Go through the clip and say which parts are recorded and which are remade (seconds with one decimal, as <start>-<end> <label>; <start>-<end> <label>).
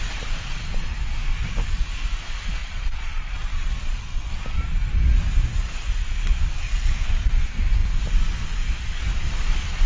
0.0-2.6 recorded; 2.6-4.4 remade; 4.4-9.9 recorded